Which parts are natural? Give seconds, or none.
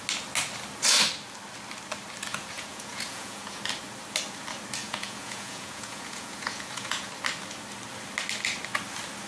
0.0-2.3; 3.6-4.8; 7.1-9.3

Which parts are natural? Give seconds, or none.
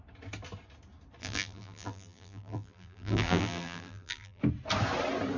0.0-1.2; 4.4-5.4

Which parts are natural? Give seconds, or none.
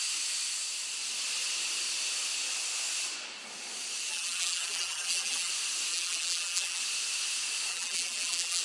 0.0-4.1; 5.5-5.9; 6.8-7.7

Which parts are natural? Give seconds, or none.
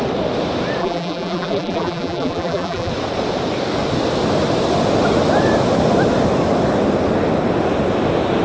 0.0-0.8; 2.9-8.4